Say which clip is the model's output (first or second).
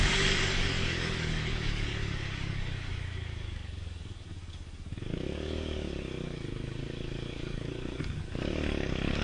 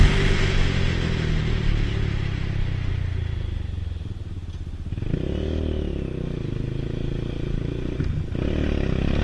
first